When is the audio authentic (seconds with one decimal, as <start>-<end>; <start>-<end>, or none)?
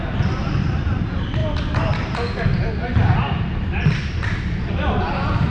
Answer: 0.0-5.5